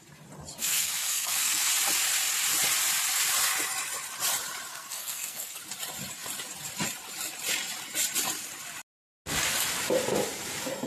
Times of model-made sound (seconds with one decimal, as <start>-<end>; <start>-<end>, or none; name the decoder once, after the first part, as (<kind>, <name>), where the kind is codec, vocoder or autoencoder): 0.6-1.7 (codec, SNAC); 4.7-5.6